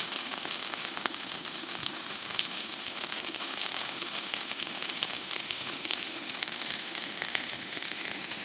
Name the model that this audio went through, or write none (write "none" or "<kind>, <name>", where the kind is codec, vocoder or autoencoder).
autoencoder, DAC-VAE